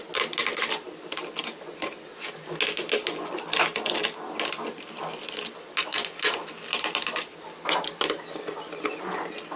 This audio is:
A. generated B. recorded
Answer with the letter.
B